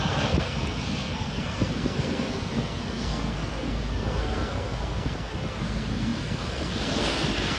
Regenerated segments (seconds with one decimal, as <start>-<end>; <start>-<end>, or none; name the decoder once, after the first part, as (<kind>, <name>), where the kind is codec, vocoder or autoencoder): 0.0-7.6 (codec, SNAC)